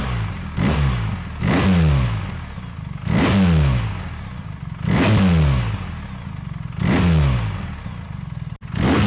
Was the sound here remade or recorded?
recorded